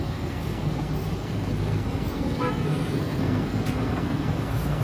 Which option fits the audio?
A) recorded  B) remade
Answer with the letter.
B